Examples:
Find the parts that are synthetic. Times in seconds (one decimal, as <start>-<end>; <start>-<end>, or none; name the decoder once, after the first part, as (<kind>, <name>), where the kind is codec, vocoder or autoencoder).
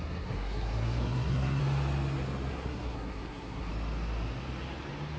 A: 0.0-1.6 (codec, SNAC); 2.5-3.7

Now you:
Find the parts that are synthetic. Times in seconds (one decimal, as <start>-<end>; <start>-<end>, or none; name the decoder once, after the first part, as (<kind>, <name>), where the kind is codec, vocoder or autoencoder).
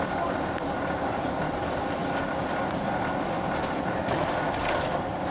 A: 0.0-5.3 (vocoder, BigVGAN v2)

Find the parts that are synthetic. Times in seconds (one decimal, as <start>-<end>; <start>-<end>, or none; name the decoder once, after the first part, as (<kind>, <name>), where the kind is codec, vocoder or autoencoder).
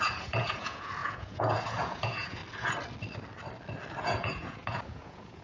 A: 0.0-2.4 (vocoder, Vocos); 4.0-5.4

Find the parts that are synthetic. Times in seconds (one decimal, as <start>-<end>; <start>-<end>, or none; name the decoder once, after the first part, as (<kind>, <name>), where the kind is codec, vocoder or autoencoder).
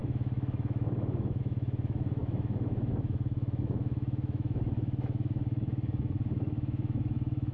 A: 0.0-7.5 (autoencoder, DAC-VAE)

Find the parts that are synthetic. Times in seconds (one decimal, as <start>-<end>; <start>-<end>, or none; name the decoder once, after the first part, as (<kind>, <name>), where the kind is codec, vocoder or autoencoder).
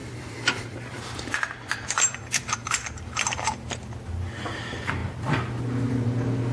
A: 0.0-3.0 (vocoder, BigVGAN v2)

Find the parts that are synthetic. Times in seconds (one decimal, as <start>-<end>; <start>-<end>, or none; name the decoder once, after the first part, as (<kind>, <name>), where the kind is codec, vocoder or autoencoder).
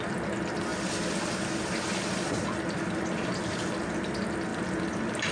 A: 0.7-3.9 (vocoder, BigVGAN v2); 4.5-5.3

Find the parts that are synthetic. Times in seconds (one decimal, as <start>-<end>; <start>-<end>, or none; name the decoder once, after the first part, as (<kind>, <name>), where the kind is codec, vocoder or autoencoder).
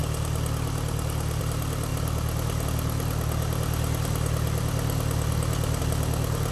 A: none